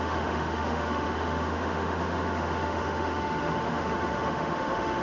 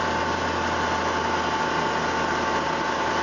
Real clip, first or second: second